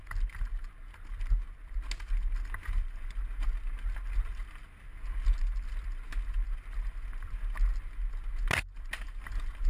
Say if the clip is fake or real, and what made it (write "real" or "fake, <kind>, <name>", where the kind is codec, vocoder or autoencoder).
real